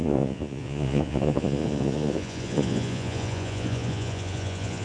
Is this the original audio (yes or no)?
no